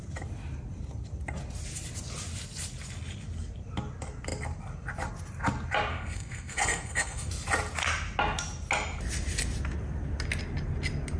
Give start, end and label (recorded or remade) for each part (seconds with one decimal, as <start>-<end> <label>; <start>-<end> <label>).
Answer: 0.0-5.9 recorded; 5.9-7.3 remade; 7.3-11.2 recorded